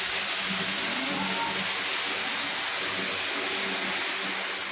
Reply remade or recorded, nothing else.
recorded